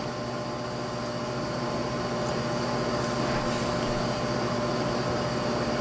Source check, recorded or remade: recorded